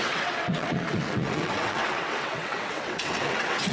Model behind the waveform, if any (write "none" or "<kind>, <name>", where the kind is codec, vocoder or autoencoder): vocoder, WaveNeXt